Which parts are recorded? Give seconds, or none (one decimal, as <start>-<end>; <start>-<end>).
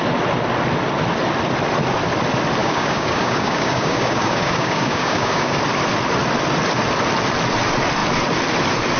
0.0-2.6; 5.6-9.0